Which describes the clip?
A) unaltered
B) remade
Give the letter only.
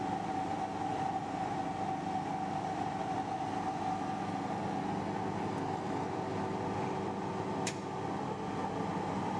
A